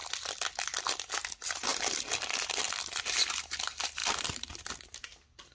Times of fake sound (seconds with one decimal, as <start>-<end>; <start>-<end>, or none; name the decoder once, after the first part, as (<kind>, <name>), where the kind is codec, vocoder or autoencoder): 1.7-3.1 (vocoder, BigVGAN v2); 4.0-4.7

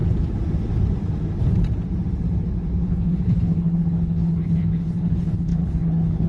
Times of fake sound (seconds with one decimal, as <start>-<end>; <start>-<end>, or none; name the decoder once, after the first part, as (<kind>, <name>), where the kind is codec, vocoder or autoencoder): 2.9-6.3 (codec, HILCodec)

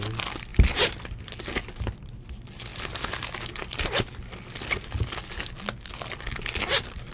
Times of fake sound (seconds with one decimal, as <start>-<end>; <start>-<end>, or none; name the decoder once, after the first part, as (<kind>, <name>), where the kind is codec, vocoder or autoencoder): none

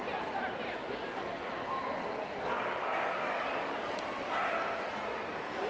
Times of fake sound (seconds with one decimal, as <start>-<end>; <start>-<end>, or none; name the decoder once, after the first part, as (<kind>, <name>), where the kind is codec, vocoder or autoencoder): 0.8-1.5 (codec, DAC); 2.0-3.9

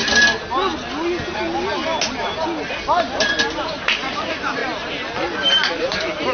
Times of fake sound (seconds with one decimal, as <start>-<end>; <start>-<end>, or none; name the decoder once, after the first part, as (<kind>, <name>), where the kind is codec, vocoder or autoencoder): 3.6-4.6 (vocoder, BigVGAN v2); 5.8-6.3

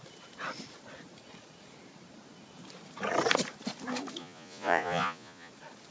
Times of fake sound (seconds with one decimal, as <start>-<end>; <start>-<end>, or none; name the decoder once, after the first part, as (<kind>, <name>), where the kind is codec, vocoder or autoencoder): 4.2-5.5 (vocoder, Vocos)

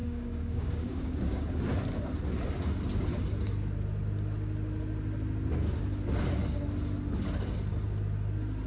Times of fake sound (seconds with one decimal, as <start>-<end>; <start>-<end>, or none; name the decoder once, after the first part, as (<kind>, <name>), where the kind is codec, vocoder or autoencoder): 0.0-1.6 (codec, DAC)

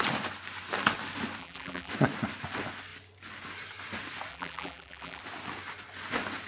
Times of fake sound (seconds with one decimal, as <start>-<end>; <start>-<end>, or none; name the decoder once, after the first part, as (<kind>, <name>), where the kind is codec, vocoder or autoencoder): 1.4-1.9 (vocoder, BigVGAN v2); 4.3-5.2